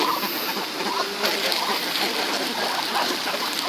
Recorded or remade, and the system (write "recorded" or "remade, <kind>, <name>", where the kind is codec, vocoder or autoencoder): recorded